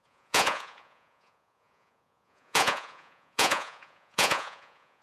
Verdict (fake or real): fake